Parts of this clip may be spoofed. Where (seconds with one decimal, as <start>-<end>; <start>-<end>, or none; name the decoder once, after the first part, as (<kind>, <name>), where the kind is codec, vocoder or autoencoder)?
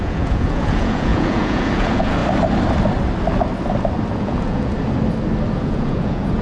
0.0-2.2 (vocoder, Vocos); 4.2-4.7; 5.6-6.4